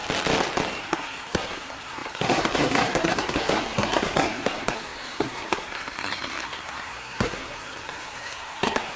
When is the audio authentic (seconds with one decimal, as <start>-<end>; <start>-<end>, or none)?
0.0-0.8